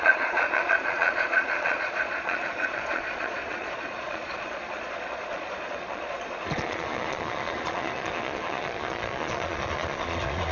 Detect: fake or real fake